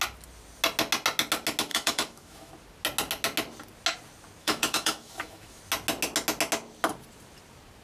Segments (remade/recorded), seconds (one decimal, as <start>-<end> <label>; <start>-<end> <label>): 0.0-1.7 recorded; 1.7-2.5 remade; 2.5-4.4 recorded; 4.4-5.6 remade; 5.6-7.8 recorded